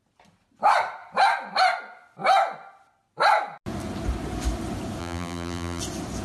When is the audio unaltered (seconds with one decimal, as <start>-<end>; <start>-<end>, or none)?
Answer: 0.0-5.0; 5.8-6.2